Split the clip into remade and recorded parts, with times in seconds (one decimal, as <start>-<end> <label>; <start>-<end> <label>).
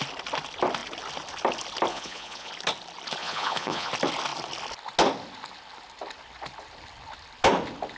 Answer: 0.0-1.9 recorded; 1.9-2.5 remade; 2.5-3.2 recorded; 3.2-3.9 remade; 3.9-8.0 recorded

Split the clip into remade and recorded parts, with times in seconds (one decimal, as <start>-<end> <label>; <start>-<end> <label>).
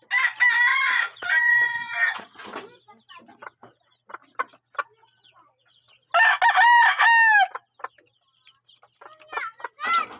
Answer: 0.0-0.7 recorded; 0.7-2.2 remade; 2.2-10.2 recorded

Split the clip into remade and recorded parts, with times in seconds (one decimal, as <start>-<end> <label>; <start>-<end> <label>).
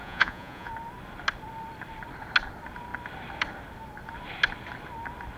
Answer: 0.0-0.7 remade; 0.7-5.4 recorded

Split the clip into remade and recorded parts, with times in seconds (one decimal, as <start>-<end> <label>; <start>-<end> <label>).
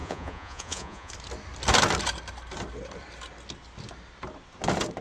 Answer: 0.0-1.1 remade; 1.1-5.0 recorded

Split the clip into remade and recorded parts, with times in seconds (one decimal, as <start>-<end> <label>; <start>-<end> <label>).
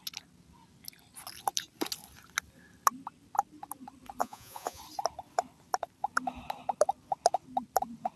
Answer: 0.0-4.2 recorded; 4.2-4.8 remade; 4.8-8.2 recorded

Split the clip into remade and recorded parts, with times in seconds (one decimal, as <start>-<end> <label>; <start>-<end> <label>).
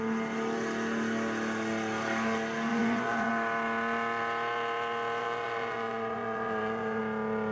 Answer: 0.0-2.7 recorded; 2.7-3.3 remade; 3.3-5.2 recorded; 5.2-7.0 remade; 7.0-7.5 recorded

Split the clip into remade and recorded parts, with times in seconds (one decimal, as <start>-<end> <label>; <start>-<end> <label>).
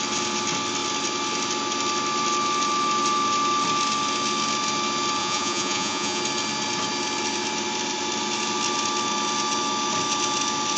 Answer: 0.0-5.2 recorded; 5.2-6.2 remade; 6.2-10.8 recorded